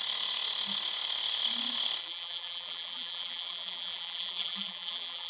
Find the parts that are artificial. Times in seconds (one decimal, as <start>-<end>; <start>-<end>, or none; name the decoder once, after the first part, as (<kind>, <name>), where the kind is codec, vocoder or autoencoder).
2.0-5.3 (vocoder, BigVGAN v2)